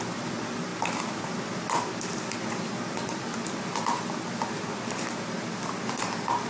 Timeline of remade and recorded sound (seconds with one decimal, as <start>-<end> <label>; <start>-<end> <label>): 0.0-6.5 recorded